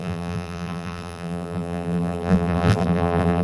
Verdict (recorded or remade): remade